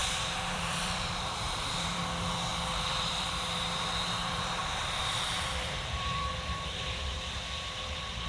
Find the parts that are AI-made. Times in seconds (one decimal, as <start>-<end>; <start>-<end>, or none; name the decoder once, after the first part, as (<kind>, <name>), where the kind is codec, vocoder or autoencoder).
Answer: 0.0-2.0 (vocoder, BigVGAN v2); 2.5-4.5; 5.0-6.3